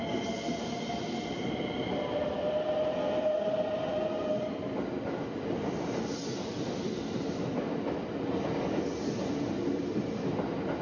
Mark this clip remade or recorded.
recorded